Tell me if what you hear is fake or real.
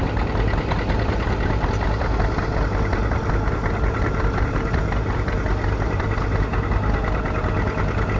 real